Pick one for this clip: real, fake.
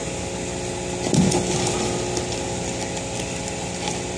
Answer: real